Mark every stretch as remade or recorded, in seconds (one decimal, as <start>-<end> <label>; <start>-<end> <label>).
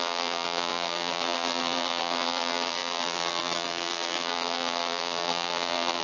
0.0-6.0 remade